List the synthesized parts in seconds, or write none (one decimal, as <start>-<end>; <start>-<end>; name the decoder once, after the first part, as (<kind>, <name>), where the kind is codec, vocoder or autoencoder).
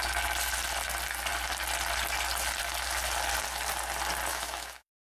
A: 4.3-5.1 (autoencoder, DAC-VAE)